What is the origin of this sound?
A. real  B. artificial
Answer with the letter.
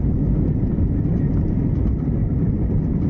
B